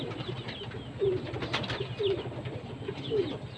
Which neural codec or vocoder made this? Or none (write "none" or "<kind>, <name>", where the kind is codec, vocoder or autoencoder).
none